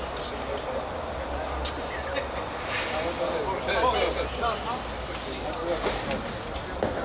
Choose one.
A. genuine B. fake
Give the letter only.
A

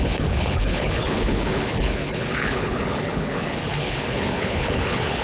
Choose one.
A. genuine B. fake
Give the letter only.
B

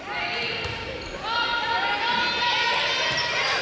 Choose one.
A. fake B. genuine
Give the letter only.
B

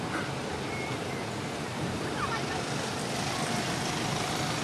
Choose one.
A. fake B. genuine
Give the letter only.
B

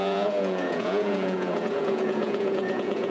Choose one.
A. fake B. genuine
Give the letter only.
A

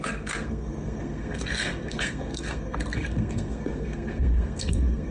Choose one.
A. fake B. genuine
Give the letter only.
A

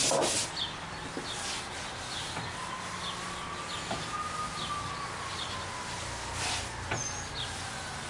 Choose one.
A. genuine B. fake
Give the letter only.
A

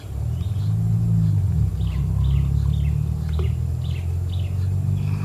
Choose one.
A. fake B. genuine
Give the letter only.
B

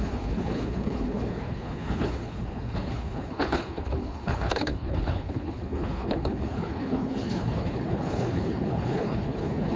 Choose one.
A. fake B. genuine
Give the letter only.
A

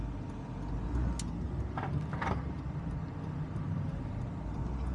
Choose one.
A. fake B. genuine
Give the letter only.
B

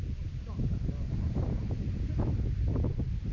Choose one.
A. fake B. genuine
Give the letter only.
B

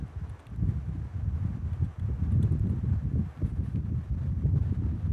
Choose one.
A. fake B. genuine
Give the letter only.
B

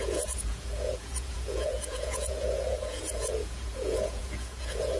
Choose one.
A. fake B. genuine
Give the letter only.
A